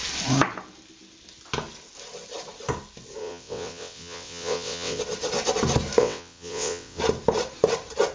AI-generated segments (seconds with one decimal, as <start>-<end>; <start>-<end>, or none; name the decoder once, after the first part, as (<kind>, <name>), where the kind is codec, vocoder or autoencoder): 3.2-5.0 (vocoder, WaveNeXt); 6.0-7.0